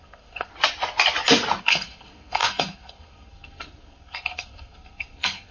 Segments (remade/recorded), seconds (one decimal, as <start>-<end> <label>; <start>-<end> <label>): 0.0-0.5 remade; 0.5-1.6 recorded; 1.6-5.5 remade